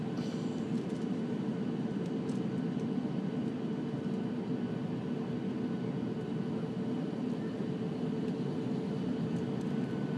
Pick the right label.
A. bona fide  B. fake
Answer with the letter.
A